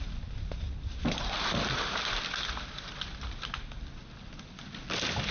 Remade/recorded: recorded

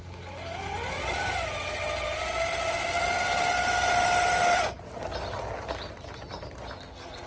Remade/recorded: recorded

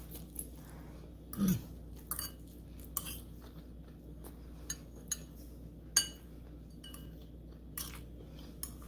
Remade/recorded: recorded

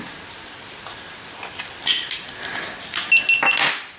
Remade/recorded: recorded